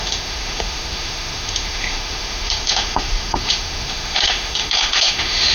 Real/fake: fake